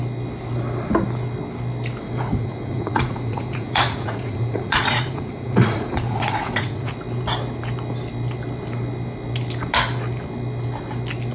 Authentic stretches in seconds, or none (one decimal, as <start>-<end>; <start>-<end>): 0.0-2.0; 6.9-11.3